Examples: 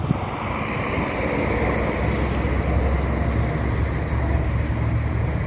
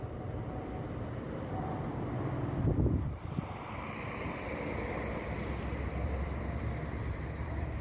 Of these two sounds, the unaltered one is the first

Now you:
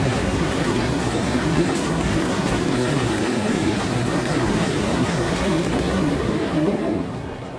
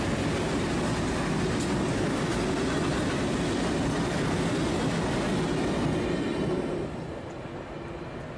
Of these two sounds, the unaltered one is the second